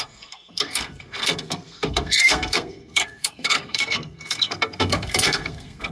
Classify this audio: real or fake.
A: fake